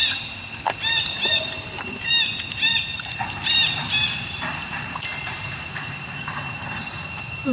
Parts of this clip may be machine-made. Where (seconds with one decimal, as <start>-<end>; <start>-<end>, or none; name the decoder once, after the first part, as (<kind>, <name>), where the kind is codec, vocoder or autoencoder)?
0.8-2.3 (vocoder, BigVGAN v2); 2.8-7.5